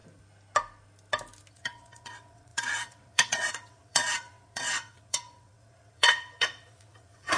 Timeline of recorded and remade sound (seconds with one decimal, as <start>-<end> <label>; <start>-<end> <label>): 0.0-1.5 recorded; 1.5-7.4 remade